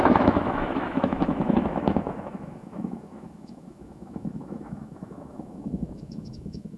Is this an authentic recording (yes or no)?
no